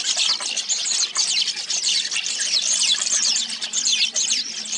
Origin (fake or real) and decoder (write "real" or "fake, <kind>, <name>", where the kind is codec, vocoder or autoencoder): real